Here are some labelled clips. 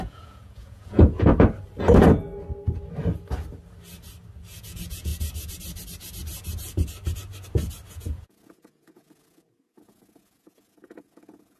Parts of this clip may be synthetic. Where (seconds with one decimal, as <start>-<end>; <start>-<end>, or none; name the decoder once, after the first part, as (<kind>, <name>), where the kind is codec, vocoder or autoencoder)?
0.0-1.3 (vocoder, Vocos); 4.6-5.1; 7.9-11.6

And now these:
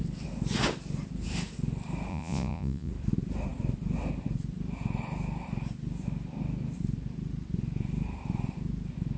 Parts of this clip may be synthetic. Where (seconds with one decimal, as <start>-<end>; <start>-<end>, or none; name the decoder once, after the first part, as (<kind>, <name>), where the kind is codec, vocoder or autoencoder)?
2.1-2.9 (vocoder, Vocos)

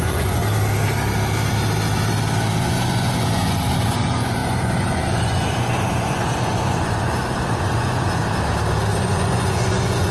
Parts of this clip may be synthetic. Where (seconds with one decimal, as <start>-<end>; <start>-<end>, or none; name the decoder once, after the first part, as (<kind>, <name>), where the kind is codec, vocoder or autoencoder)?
0.0-0.4 (vocoder, Vocos); 2.6-8.2; 9.0-10.1